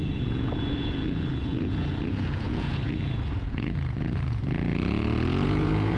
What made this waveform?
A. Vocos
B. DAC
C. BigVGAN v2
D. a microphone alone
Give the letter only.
A